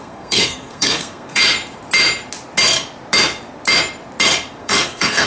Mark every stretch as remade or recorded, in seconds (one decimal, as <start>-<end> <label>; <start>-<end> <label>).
0.0-1.4 remade; 1.4-4.6 recorded; 4.6-5.3 remade

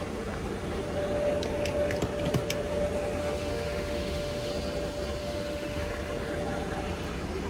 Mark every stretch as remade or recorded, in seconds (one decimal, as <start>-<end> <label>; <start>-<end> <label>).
0.0-3.2 recorded; 3.2-4.5 remade; 4.5-5.2 recorded; 5.2-5.9 remade; 5.9-7.5 recorded

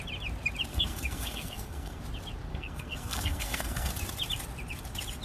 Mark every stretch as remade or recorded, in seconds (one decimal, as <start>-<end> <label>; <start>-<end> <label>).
0.0-0.7 recorded; 0.7-2.0 remade; 2.0-2.5 recorded; 2.5-3.9 remade; 3.9-5.2 recorded

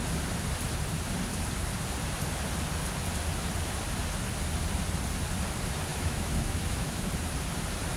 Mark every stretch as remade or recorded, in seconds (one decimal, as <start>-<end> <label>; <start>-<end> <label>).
0.0-5.9 recorded; 5.9-7.1 remade; 7.1-8.0 recorded

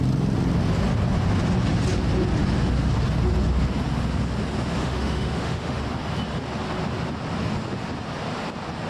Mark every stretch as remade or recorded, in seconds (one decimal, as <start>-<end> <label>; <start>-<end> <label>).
0.0-4.8 recorded; 4.8-5.8 remade; 5.8-8.9 recorded

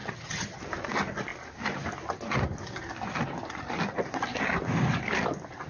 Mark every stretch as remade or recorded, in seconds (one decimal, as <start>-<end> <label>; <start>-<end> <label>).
0.0-0.6 remade; 0.6-5.7 recorded